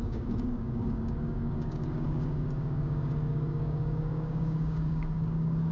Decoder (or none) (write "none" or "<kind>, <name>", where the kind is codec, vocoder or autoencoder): codec, DAC